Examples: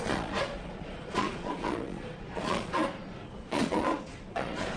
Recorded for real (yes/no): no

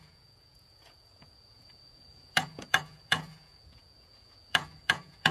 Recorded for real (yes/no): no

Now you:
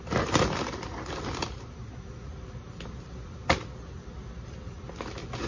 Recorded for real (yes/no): yes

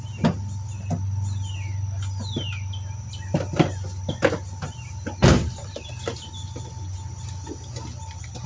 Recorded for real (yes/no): yes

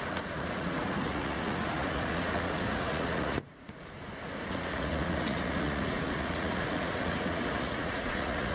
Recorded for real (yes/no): no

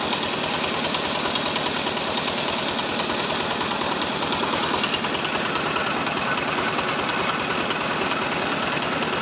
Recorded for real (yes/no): yes